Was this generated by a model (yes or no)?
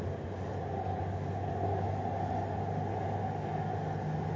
no